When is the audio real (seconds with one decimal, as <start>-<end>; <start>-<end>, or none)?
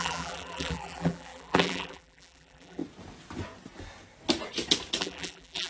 2.8-5.0